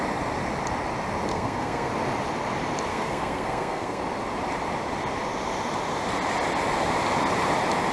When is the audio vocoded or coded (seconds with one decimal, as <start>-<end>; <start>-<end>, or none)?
1.3-1.9; 2.9-4.0